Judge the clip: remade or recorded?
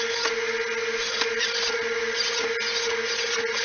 recorded